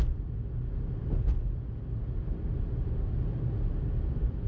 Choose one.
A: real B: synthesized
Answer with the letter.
A